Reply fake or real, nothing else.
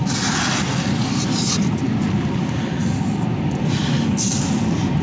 real